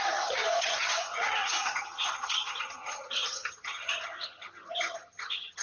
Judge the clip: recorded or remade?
remade